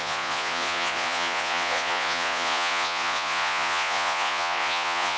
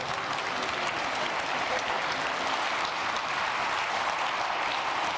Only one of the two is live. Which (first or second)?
second